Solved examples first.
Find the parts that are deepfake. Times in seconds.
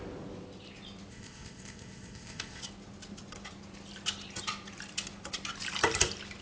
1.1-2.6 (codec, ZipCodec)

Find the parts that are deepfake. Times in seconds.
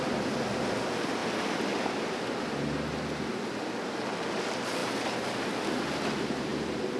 none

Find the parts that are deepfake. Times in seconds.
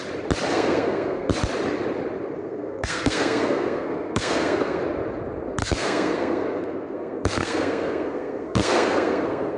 0.5-1.3 (codec, SNAC); 2.4-4.8; 5.6-9.6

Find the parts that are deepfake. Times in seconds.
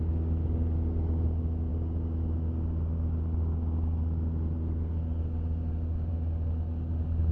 none